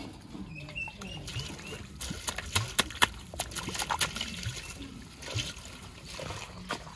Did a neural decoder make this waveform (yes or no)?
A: no